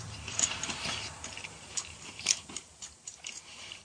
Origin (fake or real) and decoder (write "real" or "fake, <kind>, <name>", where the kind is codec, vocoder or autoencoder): fake, vocoder, BigVGAN v2